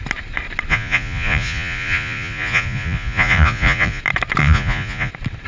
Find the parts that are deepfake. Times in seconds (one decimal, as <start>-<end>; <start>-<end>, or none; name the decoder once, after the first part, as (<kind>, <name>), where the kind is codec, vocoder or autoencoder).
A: 0.7-4.0 (vocoder, Vocos); 4.4-5.1